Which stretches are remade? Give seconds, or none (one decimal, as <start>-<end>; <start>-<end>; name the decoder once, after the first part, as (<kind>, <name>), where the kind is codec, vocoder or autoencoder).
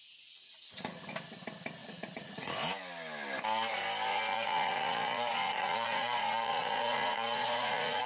0.0-1.1 (vocoder, Vocos); 1.8-2.5; 4.1-8.1